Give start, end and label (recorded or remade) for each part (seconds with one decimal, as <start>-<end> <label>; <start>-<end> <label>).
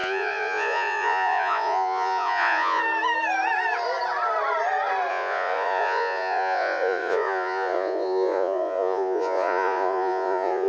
0.0-2.8 remade; 2.8-5.1 recorded; 5.1-10.7 remade